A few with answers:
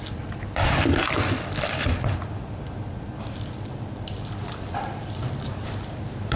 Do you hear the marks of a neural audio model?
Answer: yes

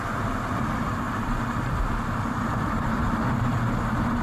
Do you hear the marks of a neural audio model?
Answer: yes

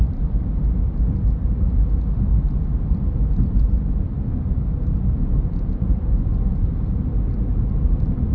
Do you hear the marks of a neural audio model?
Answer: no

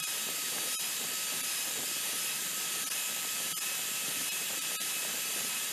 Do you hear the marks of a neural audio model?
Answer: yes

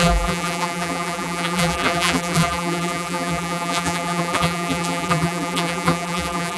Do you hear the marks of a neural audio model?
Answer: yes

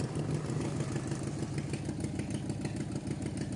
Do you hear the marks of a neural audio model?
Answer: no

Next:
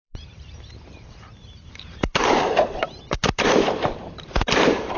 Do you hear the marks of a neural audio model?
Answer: yes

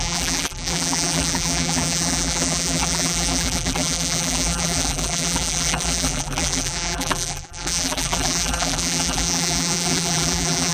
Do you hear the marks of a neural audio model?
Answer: yes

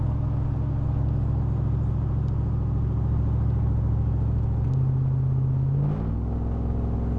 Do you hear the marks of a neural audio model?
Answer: no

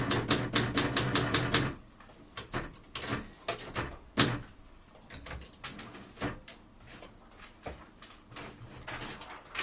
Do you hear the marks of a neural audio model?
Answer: no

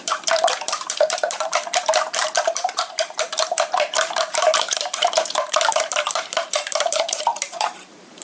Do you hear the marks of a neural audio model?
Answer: yes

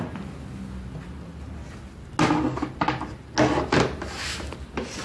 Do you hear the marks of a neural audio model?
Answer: no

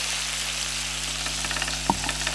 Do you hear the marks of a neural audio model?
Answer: no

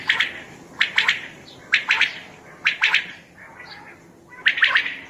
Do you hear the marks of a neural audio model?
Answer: yes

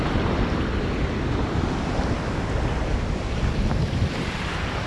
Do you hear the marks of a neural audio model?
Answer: no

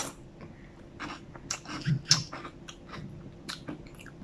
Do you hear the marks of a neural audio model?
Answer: no